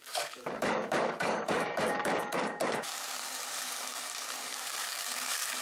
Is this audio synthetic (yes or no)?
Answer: yes